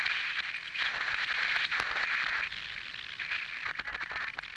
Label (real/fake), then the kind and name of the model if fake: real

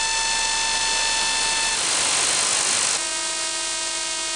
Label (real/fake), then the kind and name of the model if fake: real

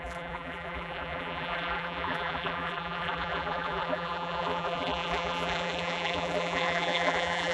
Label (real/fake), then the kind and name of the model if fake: fake, vocoder, BigVGAN v2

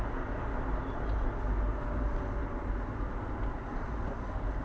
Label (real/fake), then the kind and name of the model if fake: real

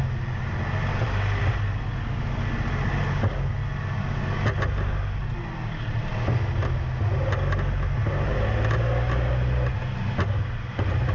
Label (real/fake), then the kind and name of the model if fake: real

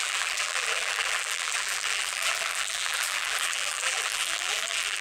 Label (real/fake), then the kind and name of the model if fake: fake, vocoder, BigVGAN v2